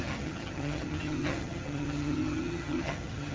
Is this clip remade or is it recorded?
remade